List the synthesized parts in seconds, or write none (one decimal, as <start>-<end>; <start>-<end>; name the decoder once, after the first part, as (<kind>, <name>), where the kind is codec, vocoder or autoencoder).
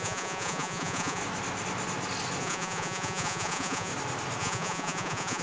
0.0-1.2 (vocoder, Vocos); 2.4-3.9; 4.4-5.4